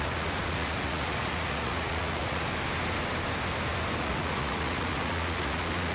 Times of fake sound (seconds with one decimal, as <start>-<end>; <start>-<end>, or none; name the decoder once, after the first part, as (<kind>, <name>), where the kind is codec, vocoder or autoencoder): 0.0-2.4 (vocoder, Vocos); 4.0-5.9